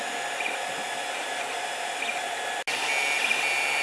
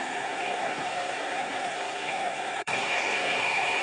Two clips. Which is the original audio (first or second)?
first